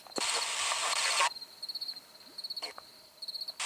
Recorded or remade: recorded